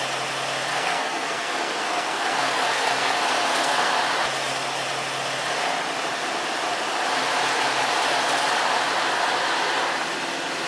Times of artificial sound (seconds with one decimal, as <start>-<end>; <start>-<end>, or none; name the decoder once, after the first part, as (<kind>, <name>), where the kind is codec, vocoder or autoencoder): 0.7-3.9 (codec, SNAC)